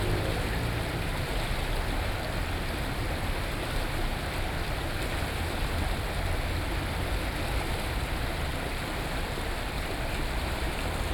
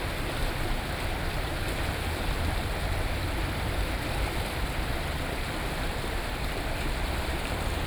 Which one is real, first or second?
first